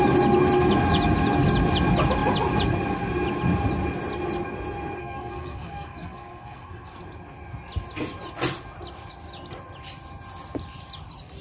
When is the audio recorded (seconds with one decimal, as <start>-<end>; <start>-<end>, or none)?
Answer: 0.0-5.0; 7.0-11.4